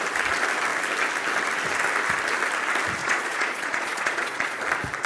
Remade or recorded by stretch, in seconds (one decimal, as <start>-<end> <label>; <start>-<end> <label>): 0.0-3.0 recorded; 3.0-4.6 remade; 4.6-5.1 recorded